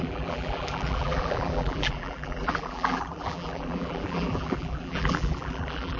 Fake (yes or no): yes